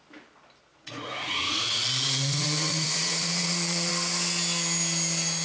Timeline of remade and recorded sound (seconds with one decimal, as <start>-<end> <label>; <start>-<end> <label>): 0.0-0.7 recorded; 0.7-3.9 remade; 3.9-5.4 recorded